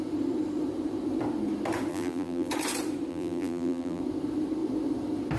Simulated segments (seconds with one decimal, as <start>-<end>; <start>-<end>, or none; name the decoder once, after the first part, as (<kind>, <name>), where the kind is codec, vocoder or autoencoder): 1.9-2.5 (vocoder, BigVGAN v2); 3.1-4.0